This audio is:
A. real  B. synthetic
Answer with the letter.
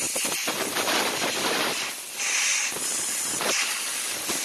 A